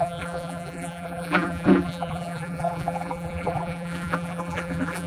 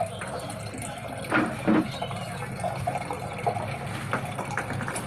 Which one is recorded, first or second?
second